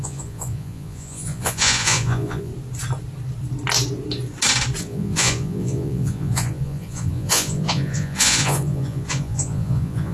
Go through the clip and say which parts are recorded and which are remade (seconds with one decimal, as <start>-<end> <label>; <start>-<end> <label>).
0.0-2.5 remade; 2.5-4.8 recorded; 4.8-10.1 remade